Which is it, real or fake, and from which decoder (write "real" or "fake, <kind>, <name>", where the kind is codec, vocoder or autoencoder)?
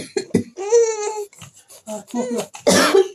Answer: real